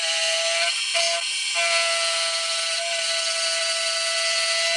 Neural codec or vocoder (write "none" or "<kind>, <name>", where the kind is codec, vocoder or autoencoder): none